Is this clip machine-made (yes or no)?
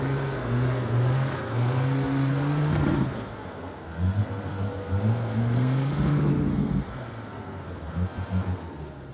yes